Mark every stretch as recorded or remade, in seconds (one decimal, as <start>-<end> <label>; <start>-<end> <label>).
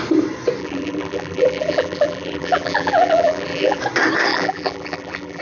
0.0-0.6 recorded; 0.6-3.8 remade; 3.8-4.3 recorded; 4.3-5.4 remade